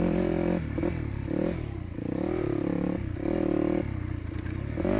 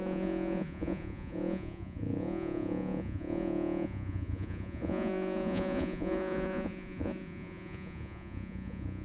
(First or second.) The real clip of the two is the first